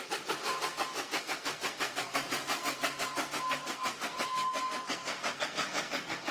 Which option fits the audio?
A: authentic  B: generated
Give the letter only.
B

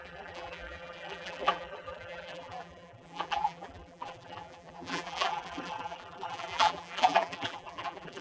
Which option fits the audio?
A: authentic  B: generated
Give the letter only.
B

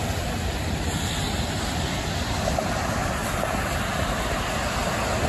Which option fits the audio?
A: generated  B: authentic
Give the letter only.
A